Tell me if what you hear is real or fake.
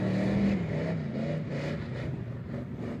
real